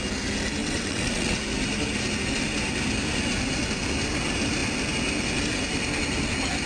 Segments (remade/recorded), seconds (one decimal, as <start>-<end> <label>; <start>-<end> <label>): 0.0-0.6 recorded; 0.6-1.4 remade; 1.4-6.7 recorded

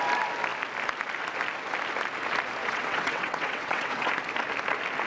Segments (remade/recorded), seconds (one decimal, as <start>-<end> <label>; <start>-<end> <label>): 0.0-2.6 recorded; 2.6-4.1 remade; 4.1-5.1 recorded

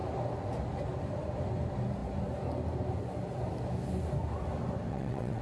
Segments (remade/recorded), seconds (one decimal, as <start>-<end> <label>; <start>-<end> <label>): 0.0-4.9 recorded; 4.9-5.4 remade

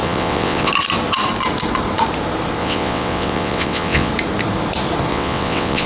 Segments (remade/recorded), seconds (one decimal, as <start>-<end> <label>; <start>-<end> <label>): 0.0-0.7 remade; 0.7-2.6 recorded; 2.6-4.1 remade; 4.1-5.1 recorded; 5.1-5.9 remade

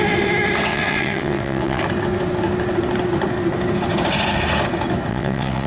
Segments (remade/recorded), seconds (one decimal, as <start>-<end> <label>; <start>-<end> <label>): 0.0-0.7 recorded; 0.7-1.8 remade; 1.8-5.1 recorded; 5.1-5.7 remade

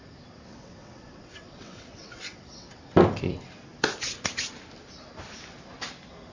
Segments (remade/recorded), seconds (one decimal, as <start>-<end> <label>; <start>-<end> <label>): 0.0-0.5 recorded; 0.5-2.7 remade; 2.7-6.3 recorded

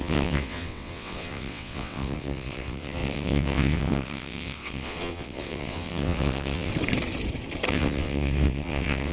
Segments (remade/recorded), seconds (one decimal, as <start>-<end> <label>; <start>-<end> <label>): 0.0-6.7 remade; 6.7-7.7 recorded; 7.7-9.1 remade